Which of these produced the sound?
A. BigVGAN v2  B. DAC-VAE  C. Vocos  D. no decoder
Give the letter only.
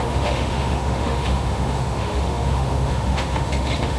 B